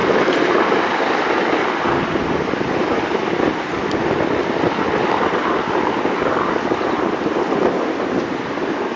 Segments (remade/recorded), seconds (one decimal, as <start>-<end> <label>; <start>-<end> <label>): 0.0-9.0 recorded